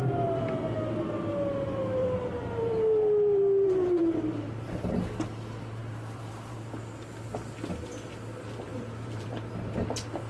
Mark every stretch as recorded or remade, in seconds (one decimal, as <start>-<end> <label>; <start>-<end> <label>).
0.0-2.0 recorded; 2.0-4.9 remade; 4.9-5.8 recorded; 5.8-6.7 remade; 6.7-8.7 recorded; 8.7-9.5 remade; 9.5-10.3 recorded